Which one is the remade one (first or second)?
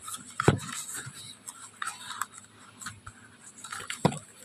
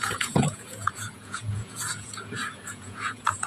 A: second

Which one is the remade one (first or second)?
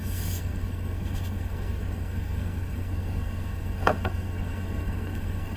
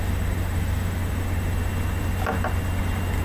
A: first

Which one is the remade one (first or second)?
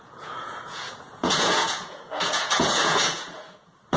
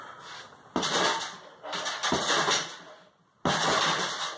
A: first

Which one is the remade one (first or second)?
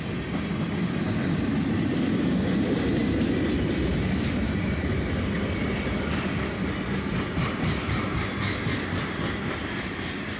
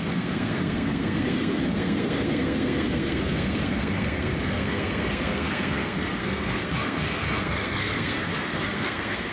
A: second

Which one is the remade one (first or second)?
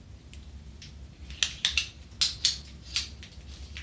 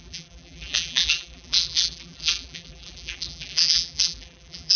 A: second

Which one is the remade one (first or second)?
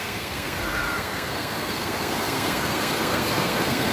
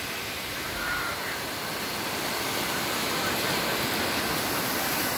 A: first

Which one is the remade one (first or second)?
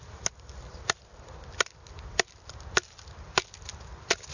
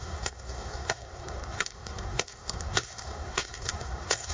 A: second